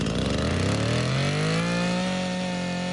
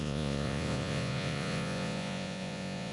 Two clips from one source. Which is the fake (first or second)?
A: second